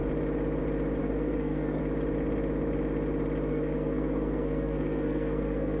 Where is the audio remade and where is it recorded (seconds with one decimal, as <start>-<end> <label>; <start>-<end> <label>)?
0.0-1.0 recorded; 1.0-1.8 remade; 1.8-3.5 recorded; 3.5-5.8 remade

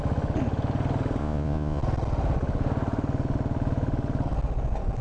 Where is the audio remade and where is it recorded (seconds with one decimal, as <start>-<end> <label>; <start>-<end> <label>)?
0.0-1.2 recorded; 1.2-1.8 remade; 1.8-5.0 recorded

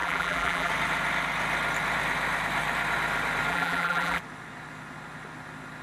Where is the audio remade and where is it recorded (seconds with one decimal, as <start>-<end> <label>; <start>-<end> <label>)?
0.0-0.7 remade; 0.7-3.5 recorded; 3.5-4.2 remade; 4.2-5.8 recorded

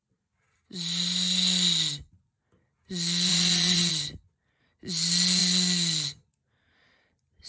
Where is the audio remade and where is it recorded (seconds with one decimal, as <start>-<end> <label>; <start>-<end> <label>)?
0.0-3.3 recorded; 3.3-3.9 remade; 3.9-7.5 recorded